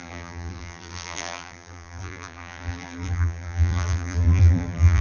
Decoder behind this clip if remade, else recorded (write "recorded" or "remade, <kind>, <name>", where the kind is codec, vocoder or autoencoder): remade, vocoder, BigVGAN v2